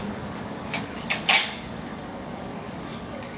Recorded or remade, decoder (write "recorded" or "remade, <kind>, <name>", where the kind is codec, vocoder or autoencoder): remade, codec, DAC